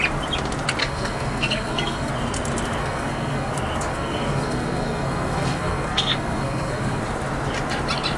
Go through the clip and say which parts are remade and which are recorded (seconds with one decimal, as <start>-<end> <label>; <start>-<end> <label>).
0.0-0.8 recorded; 0.8-2.1 remade; 2.1-2.8 recorded; 2.8-3.5 remade; 3.5-3.9 recorded; 3.9-7.0 remade; 7.0-8.2 recorded